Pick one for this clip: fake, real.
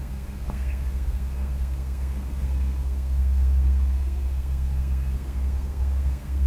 fake